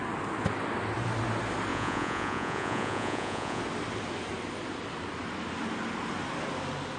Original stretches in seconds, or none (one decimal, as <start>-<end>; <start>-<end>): 0.0-1.7; 3.6-7.0